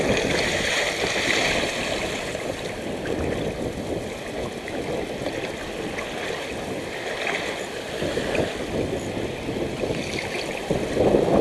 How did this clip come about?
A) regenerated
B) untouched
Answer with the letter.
B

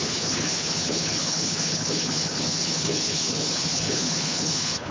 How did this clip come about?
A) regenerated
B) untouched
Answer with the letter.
A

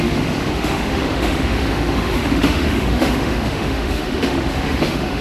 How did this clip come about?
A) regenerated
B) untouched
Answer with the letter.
A